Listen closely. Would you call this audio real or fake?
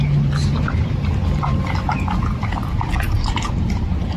real